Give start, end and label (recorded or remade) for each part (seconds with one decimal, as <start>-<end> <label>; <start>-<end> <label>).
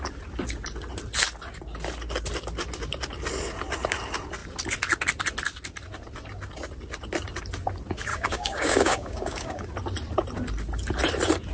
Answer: 0.0-8.1 recorded; 8.1-9.7 remade; 9.7-11.5 recorded